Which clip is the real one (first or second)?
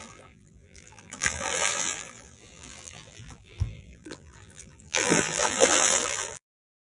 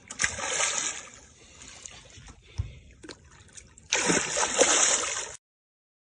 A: second